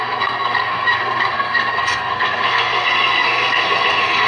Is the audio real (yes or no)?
no